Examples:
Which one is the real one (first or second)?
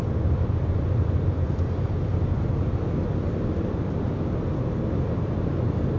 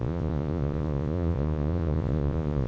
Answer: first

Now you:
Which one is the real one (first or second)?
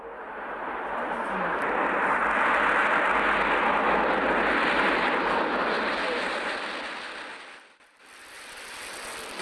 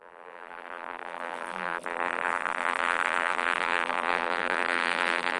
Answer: first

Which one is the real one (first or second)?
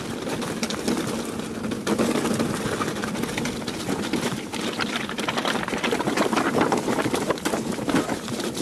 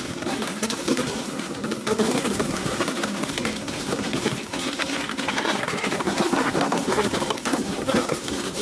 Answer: first